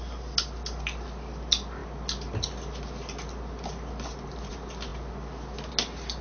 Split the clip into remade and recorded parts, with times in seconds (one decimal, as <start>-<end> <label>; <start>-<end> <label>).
0.0-6.2 recorded